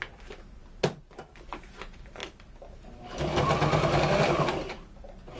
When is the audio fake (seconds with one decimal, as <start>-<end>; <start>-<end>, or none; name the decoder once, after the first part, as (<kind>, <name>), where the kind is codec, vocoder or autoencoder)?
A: none